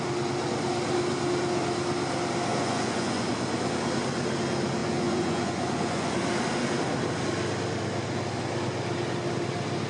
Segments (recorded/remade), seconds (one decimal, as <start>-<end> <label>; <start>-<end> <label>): 0.0-2.5 recorded; 2.5-3.3 remade; 3.3-4.8 recorded; 4.8-6.1 remade; 6.1-9.9 recorded